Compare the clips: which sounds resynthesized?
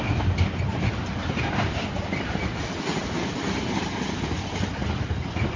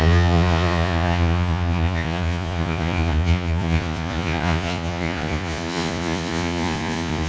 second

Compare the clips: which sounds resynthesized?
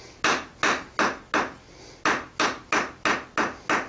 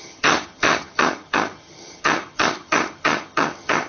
second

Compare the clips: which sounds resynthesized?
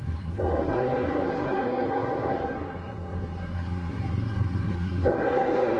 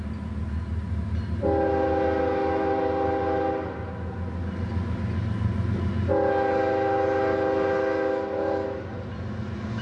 first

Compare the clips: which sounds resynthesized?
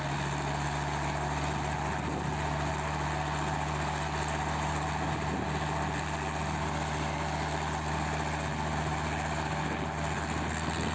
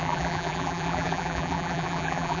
second